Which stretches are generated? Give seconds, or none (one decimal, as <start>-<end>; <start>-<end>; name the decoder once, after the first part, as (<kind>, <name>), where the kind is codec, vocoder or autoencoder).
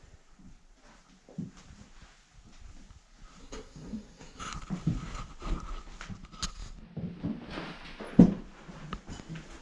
3.4-4.4 (codec, SNAC)